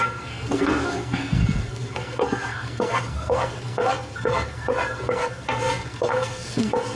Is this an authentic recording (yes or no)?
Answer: no